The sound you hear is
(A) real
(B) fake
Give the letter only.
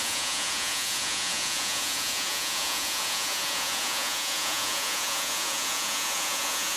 B